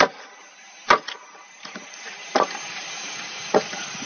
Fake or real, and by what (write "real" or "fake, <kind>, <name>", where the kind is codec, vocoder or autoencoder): real